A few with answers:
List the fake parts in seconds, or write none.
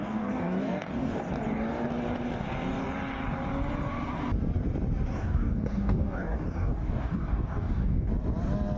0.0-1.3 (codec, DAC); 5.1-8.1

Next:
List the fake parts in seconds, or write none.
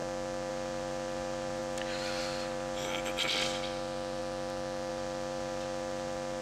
0.5-4.2 (vocoder, BigVGAN v2); 4.9-6.4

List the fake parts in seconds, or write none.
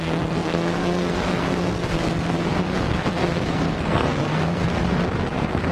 0.0-5.7 (codec, SNAC)